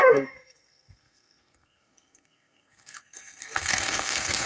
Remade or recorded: remade